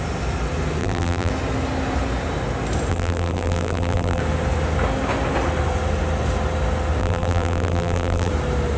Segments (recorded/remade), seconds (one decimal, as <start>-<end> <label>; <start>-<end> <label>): 0.0-0.8 recorded; 0.8-1.3 remade; 1.3-2.9 recorded; 2.9-4.2 remade; 4.2-7.0 recorded; 7.0-8.3 remade; 8.3-8.8 recorded